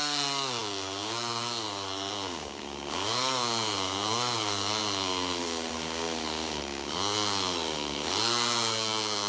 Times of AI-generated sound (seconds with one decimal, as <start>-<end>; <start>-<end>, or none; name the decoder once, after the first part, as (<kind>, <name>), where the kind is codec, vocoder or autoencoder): 0.0-9.3 (codec, SNAC)